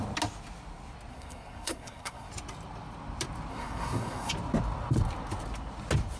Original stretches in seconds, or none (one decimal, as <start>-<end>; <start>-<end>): 0.0-1.1; 2.3-3.5; 4.3-6.2